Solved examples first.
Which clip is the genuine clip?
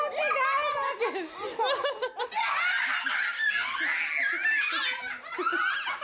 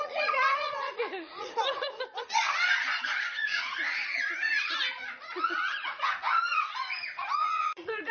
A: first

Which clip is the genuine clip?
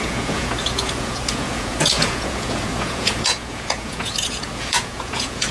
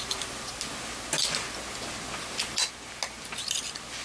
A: second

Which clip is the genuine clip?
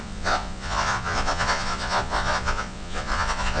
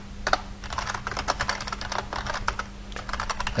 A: second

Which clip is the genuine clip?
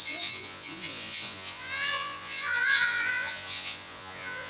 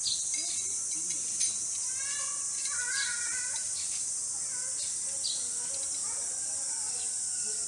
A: second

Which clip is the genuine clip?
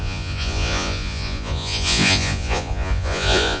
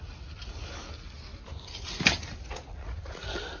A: second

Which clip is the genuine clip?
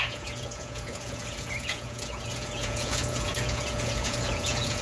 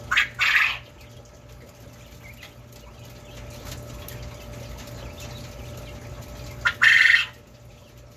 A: second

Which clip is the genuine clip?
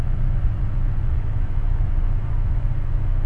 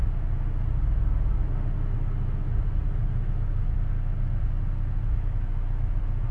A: second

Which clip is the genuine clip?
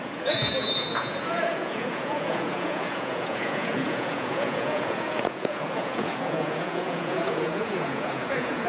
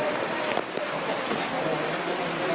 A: second